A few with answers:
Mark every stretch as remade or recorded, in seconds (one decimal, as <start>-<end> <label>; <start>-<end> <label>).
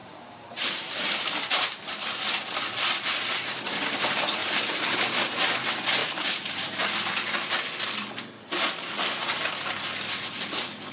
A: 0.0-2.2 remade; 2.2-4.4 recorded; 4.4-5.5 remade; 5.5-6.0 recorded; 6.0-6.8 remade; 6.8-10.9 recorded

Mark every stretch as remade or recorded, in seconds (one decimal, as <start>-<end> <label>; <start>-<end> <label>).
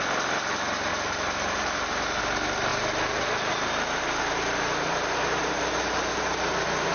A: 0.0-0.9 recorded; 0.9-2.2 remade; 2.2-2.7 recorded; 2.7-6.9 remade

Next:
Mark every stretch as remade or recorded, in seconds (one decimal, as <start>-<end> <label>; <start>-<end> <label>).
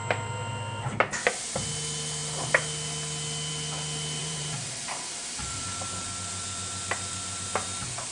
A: 0.0-4.2 recorded; 4.2-5.6 remade; 5.6-8.1 recorded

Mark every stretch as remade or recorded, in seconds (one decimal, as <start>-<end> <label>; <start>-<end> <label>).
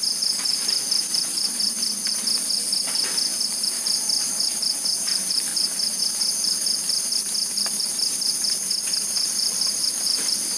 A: 0.0-5.5 remade; 5.5-6.0 recorded; 6.0-10.6 remade